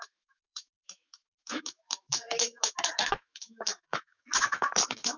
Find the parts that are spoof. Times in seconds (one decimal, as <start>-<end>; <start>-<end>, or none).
0.0-5.2